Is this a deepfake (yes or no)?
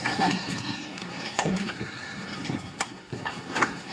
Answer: yes